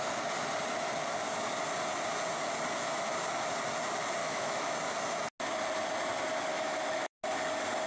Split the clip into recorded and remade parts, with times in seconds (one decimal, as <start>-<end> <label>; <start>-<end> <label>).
0.0-4.2 recorded; 4.2-4.7 remade; 4.7-6.5 recorded; 6.5-7.1 remade; 7.1-7.9 recorded